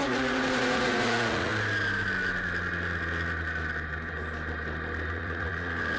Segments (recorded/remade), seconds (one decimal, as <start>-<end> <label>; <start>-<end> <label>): 0.0-1.5 remade; 1.5-5.1 recorded; 5.1-6.0 remade